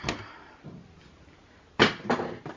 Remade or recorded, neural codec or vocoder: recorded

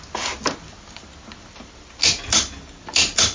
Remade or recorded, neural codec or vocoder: recorded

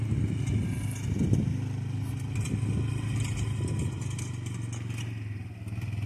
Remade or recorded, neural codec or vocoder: recorded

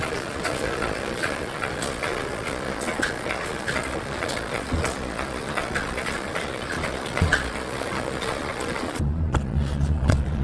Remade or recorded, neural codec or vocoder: remade, vocoder, Vocos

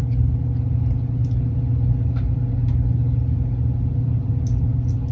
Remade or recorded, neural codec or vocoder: recorded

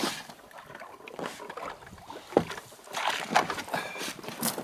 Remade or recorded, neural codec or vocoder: recorded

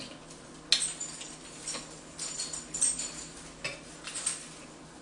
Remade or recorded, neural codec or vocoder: recorded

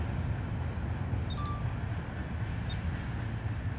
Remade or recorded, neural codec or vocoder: recorded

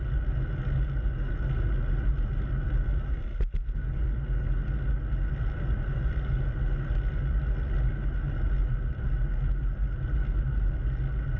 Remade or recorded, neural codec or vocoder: recorded